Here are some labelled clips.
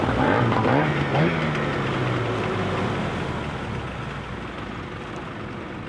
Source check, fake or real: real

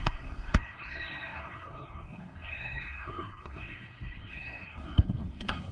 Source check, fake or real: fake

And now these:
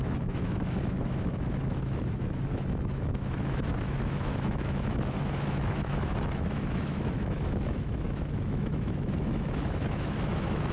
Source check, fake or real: fake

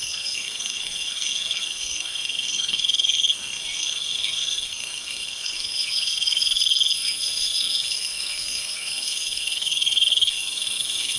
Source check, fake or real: fake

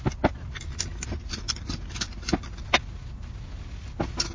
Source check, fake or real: real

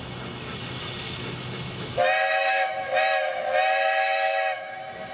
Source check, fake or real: fake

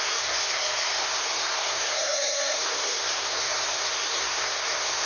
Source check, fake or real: fake